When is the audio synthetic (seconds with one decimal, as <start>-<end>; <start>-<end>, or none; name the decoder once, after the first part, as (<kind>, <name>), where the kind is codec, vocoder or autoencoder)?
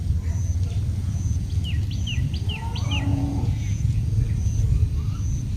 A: 1.0-1.5 (vocoder, Vocos); 3.1-4.2